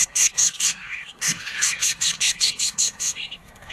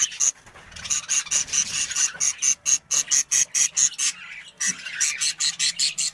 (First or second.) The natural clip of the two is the second